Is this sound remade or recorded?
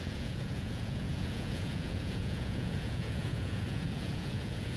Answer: remade